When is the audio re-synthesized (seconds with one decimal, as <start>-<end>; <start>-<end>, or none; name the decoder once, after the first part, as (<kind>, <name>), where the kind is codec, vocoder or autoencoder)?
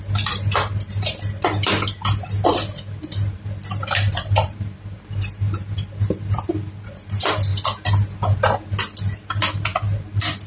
0.0-7.5 (vocoder, BigVGAN v2); 8.8-10.5